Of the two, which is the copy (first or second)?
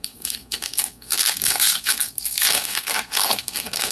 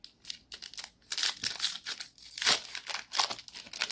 first